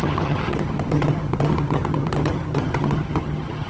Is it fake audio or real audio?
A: fake